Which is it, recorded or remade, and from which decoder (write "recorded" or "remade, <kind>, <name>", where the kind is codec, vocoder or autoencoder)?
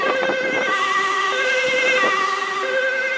recorded